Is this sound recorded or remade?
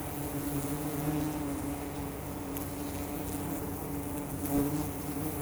recorded